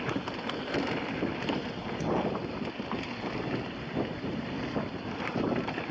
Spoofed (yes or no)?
no